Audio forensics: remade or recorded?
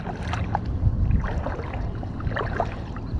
recorded